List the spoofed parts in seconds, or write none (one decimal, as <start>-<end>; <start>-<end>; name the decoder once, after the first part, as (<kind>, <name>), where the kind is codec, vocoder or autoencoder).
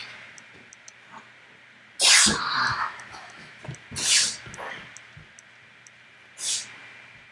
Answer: 2.7-3.6 (autoencoder, DAC-VAE)